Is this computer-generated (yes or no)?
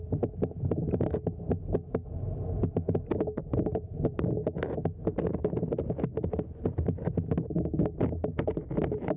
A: no